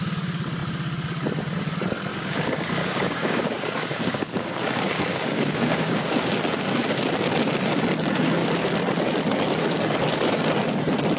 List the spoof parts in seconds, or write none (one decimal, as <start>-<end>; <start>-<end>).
2.1-6.3